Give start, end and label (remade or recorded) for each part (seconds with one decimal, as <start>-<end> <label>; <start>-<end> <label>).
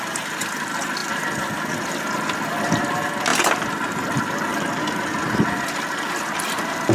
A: 0.0-6.9 recorded